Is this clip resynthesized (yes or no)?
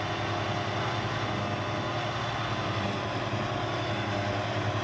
no